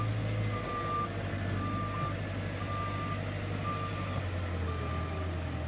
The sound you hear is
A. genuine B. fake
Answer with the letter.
A